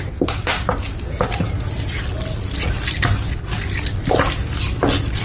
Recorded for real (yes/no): yes